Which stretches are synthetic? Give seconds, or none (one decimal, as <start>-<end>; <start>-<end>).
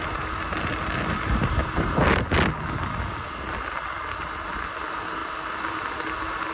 none